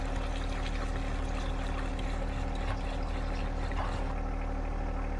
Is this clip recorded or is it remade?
recorded